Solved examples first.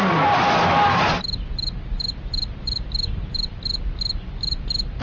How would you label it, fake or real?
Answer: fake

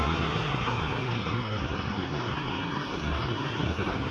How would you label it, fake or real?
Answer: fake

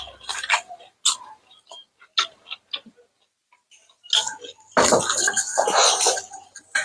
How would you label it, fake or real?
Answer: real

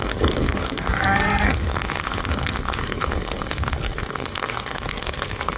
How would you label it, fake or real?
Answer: fake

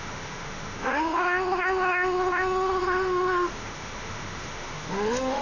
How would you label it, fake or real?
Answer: fake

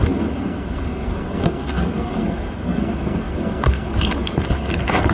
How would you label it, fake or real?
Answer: fake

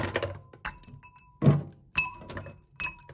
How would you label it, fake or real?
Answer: real